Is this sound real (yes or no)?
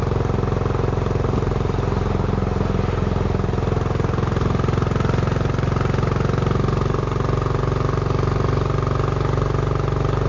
yes